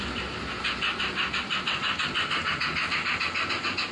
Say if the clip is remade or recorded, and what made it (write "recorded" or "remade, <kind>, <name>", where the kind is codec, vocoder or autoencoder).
recorded